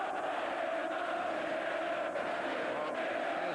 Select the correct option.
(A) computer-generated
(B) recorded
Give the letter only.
B